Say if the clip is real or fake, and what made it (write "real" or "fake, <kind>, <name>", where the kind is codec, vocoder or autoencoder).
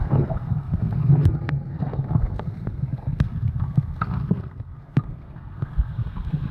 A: fake, codec, SNAC